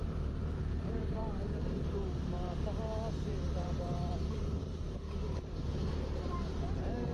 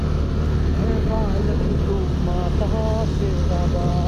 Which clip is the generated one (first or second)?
first